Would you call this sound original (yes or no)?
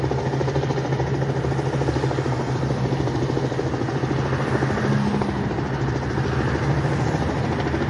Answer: yes